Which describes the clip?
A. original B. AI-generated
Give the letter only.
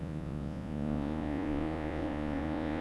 B